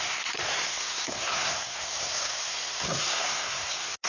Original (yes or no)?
no